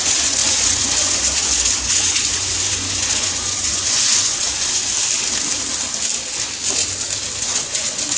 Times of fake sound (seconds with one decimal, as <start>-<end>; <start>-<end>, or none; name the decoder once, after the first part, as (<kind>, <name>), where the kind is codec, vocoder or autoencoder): 0.0-4.8 (vocoder, Vocos); 7.4-8.2